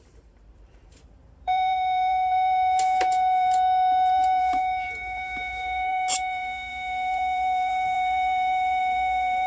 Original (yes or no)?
no